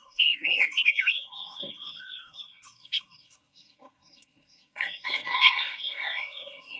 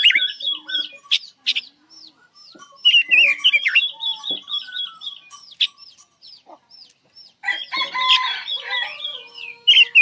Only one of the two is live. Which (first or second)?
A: second